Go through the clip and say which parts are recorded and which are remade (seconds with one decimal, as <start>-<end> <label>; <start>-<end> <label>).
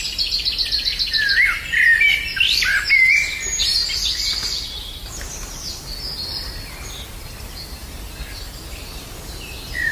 0.0-9.9 recorded